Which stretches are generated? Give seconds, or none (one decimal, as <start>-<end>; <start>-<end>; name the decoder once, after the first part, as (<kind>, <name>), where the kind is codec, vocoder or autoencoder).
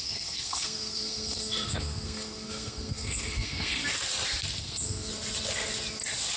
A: 0.0-3.8 (codec, SNAC); 4.6-5.1